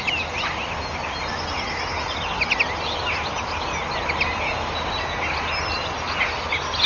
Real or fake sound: real